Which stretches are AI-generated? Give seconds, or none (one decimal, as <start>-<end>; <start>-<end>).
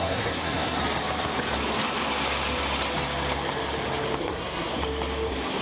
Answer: 0.0-0.8; 4.2-4.7